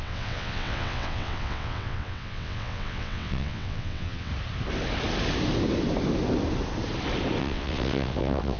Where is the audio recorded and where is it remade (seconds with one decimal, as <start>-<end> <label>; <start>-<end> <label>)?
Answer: 0.0-4.3 remade; 4.3-7.4 recorded; 7.4-8.6 remade